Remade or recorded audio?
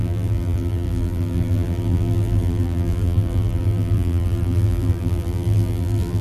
remade